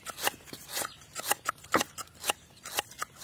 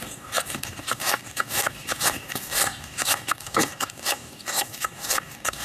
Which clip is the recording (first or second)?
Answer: first